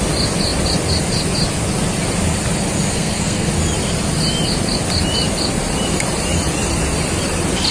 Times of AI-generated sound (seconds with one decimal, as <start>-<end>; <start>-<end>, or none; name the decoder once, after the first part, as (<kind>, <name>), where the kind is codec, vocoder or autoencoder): 2.9-3.5 (codec, SNAC)

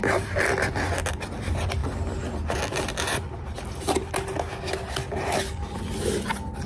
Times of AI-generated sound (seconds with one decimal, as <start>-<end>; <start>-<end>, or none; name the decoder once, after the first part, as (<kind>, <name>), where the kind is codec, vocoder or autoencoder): 0.0-0.9 (vocoder, BigVGAN v2)

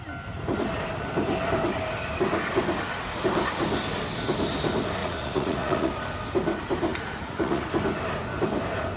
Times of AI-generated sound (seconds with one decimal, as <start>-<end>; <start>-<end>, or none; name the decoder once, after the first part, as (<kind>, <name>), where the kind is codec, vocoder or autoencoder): 5.0-5.9 (vocoder, Vocos); 6.9-7.7

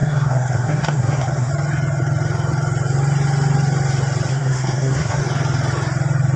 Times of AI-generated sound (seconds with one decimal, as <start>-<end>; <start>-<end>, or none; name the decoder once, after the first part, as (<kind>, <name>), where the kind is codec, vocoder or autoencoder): 0.0-1.5 (codec, SNAC); 4.3-5.2

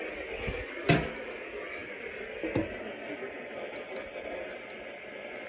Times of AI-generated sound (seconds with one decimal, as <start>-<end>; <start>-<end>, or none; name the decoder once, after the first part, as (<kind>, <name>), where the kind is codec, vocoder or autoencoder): none

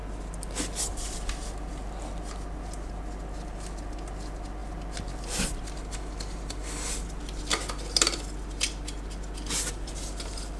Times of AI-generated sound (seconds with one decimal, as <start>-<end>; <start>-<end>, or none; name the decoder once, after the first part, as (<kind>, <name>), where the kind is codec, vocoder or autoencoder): none

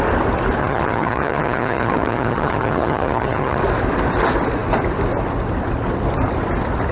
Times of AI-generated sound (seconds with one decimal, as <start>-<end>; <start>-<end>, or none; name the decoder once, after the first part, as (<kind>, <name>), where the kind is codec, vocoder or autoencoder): 0.6-3.6 (vocoder, HiFi-GAN)

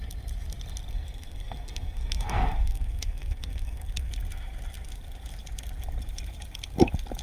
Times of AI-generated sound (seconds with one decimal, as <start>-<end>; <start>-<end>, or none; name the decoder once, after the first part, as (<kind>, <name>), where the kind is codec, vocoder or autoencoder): 0.9-4.1 (codec, SNAC)